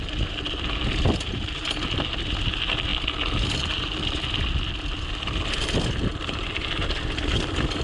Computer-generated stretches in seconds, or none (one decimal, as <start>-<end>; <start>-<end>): none